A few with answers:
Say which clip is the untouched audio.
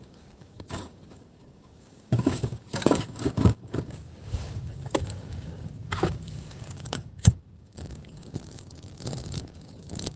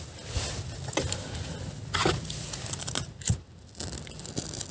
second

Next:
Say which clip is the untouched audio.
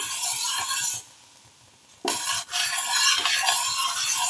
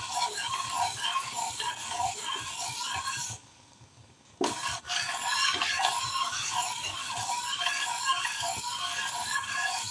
first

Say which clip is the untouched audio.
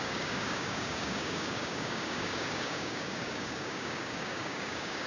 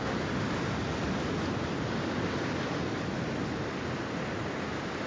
second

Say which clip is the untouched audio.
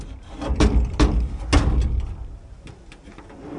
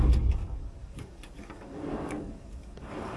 first